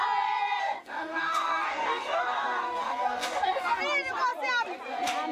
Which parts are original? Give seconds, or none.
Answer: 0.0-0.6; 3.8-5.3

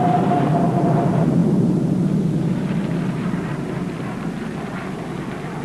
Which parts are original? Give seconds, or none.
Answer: 0.0-5.6

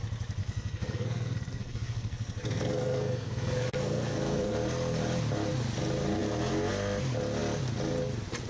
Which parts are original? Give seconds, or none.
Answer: 0.0-0.4; 4.5-8.5

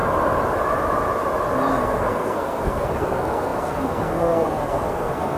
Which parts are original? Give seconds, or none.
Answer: 0.0-1.7

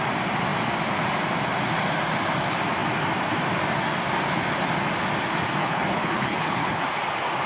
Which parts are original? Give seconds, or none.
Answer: 0.0-5.6; 6.8-7.5

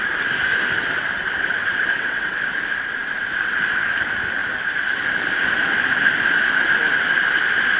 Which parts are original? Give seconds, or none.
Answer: 0.0-1.6; 2.4-7.8

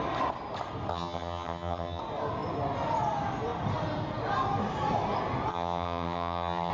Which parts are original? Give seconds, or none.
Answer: 0.0-0.9; 2.0-5.5